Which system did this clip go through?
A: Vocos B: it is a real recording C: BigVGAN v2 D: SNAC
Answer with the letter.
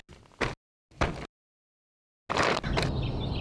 B